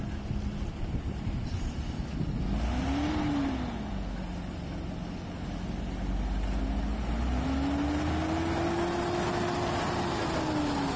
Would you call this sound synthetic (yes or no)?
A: no